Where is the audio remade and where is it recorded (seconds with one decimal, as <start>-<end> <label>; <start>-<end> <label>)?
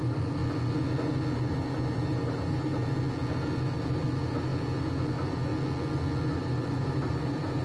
0.0-0.4 remade; 0.4-1.4 recorded; 1.4-2.8 remade; 2.8-3.8 recorded; 3.8-5.5 remade; 5.5-6.3 recorded; 6.3-7.6 remade